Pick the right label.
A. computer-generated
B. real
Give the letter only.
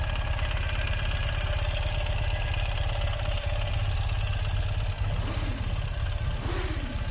B